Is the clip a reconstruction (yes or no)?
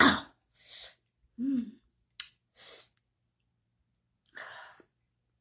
no